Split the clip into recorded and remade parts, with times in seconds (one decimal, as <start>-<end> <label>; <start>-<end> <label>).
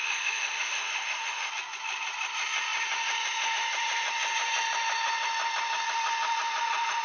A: 0.0-1.5 remade; 1.5-7.0 recorded